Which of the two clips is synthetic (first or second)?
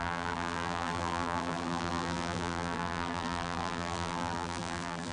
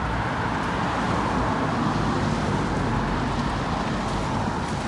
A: first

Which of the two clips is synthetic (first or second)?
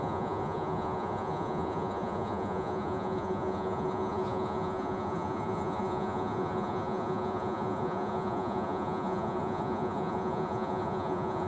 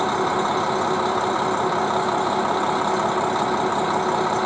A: first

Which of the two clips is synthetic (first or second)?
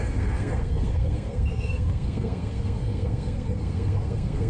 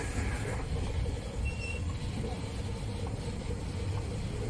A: first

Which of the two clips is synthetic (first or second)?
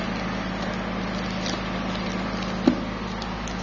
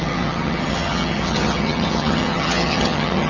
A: second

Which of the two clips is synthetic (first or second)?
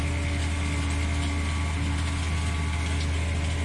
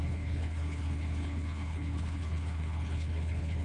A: second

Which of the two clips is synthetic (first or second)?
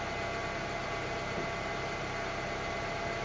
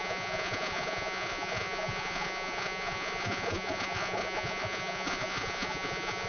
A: second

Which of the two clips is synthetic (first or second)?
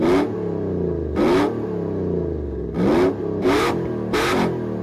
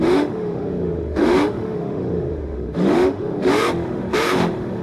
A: second